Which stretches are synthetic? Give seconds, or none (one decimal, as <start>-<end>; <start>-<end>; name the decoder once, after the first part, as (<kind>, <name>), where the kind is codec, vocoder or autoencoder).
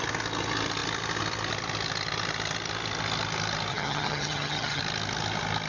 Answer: 3.7-4.8 (vocoder, HiFi-GAN)